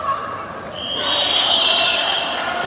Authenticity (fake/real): fake